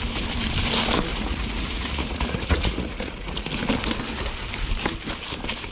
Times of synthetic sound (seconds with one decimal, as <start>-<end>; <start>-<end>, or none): 1.1-3.5